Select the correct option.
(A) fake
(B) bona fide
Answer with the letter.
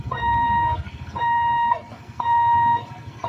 A